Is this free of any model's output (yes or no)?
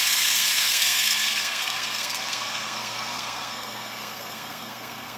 no